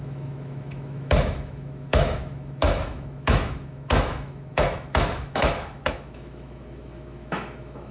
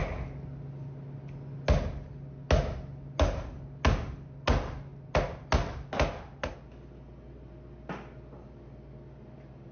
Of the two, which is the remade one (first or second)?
first